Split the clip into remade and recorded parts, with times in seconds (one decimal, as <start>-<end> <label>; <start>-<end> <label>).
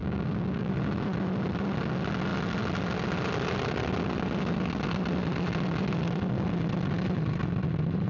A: 0.0-0.7 remade; 0.7-8.1 recorded